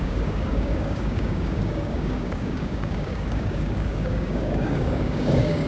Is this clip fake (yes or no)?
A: yes